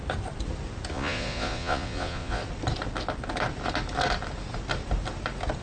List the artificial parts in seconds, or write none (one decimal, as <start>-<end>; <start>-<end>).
0.9-2.4